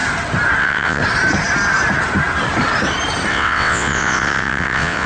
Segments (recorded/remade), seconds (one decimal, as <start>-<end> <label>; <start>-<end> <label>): 0.0-0.6 recorded; 0.6-1.0 remade; 1.0-3.3 recorded; 3.3-5.1 remade